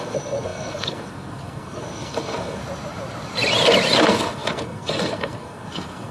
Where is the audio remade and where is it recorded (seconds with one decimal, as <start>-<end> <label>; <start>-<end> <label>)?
0.0-2.6 remade; 2.6-4.0 recorded; 4.0-6.1 remade